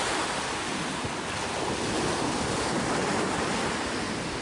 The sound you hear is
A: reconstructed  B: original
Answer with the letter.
B